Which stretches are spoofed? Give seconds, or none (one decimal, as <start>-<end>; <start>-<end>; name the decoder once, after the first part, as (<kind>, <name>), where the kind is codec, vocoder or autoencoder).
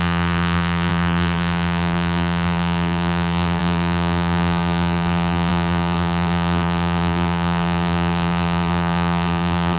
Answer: 0.0-9.8 (vocoder, BigVGAN v2)